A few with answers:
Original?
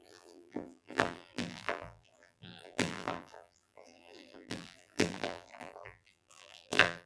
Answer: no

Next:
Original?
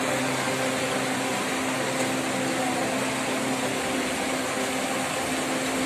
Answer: yes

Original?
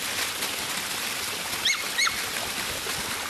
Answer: yes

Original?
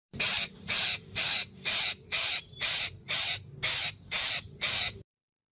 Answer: no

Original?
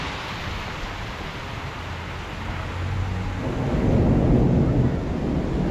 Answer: yes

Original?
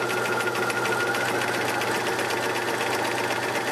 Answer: yes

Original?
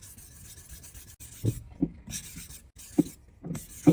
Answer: yes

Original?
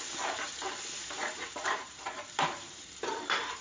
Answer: no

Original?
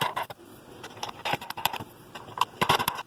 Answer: no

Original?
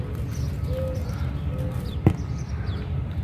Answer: no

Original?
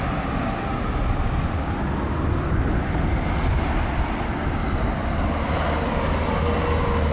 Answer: yes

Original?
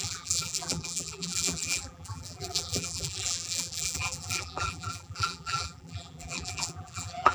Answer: no